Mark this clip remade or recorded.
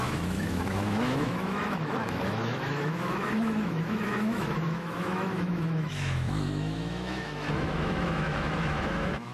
remade